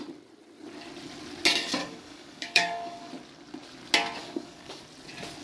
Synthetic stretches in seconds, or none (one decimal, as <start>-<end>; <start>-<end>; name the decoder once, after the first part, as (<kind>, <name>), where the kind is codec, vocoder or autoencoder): 1.8-3.1 (codec, DAC); 4.2-4.8